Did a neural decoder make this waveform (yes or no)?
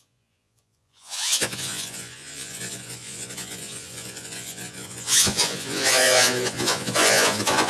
yes